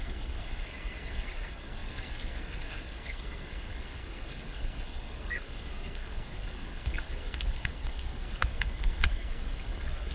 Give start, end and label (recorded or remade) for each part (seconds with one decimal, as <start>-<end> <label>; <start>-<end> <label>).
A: 0.0-10.1 remade